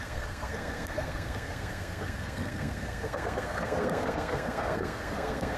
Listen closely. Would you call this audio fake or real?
fake